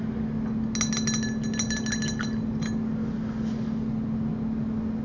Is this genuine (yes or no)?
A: yes